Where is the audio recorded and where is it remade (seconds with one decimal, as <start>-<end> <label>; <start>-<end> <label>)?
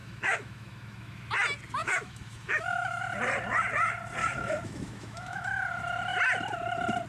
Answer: 0.0-1.3 remade; 1.3-1.8 recorded; 1.8-3.0 remade; 3.0-4.2 recorded; 4.2-5.5 remade; 5.5-7.1 recorded